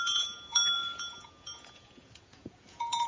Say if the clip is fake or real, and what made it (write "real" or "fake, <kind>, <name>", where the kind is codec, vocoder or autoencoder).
fake, vocoder, Vocos